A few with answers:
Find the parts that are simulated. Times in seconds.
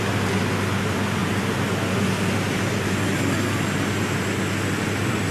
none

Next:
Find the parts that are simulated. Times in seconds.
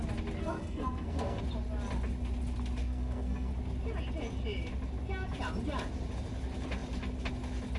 0.4-1.4 (codec, SNAC); 2.8-3.5